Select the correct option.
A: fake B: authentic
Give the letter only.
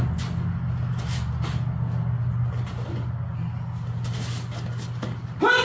B